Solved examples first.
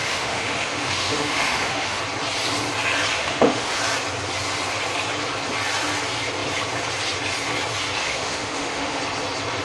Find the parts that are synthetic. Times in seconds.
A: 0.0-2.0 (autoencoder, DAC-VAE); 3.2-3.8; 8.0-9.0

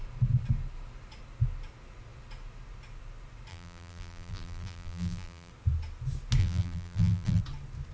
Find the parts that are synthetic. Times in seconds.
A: 3.5-5.5 (vocoder, BigVGAN v2); 6.4-7.4

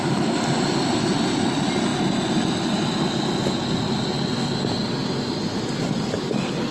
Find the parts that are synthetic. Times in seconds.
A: none

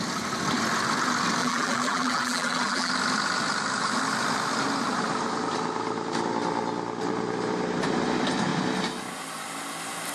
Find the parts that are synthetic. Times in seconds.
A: 1.4-2.9 (vocoder, BigVGAN v2)